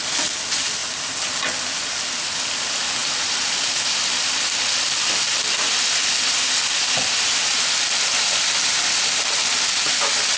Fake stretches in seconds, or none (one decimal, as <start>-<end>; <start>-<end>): none